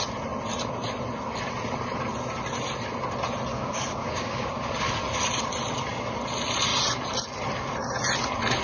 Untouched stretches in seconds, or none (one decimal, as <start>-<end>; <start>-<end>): 0.0-3.5; 4.5-8.6